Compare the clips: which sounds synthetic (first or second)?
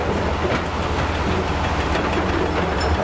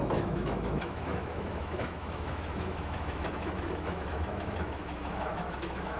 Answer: second